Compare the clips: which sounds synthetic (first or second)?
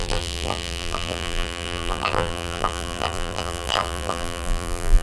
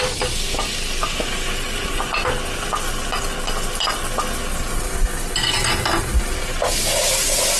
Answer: first